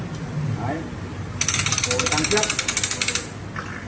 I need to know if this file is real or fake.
real